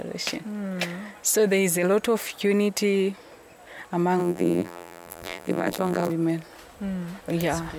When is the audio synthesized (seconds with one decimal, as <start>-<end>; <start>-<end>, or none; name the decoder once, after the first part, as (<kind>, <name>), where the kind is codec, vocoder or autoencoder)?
4.2-6.1 (vocoder, BigVGAN v2)